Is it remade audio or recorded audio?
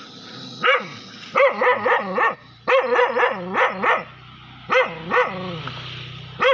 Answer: recorded